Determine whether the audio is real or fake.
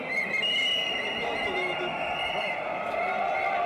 real